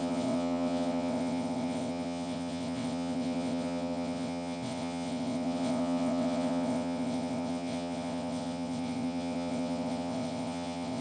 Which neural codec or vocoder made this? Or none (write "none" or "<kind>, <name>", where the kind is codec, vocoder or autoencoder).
vocoder, WaveNeXt